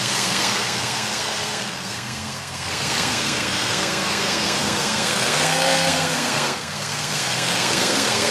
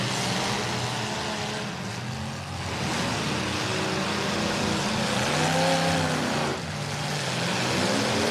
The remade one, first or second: first